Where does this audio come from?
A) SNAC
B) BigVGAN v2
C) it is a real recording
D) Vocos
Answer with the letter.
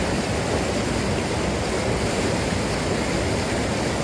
C